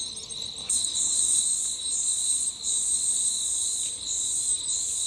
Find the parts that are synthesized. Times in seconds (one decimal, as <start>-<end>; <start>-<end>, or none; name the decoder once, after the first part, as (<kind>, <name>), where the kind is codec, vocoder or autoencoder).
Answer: 0.6-1.4 (vocoder, Vocos)